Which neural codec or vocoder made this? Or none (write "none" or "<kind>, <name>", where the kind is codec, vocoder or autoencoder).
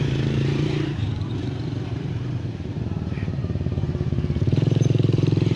vocoder, BigVGAN v2